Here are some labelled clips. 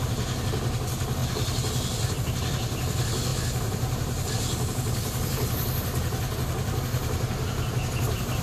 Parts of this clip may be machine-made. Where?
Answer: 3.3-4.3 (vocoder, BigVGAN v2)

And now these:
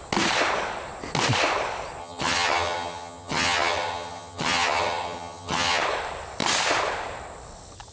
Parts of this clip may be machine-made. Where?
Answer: 2.0-5.8 (vocoder, HiFi-GAN)

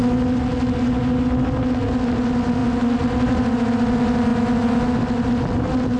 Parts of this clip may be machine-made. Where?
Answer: none

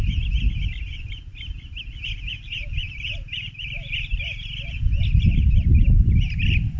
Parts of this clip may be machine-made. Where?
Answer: none

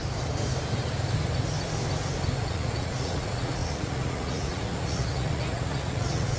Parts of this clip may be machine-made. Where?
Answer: 2.4-6.4 (vocoder, Vocos)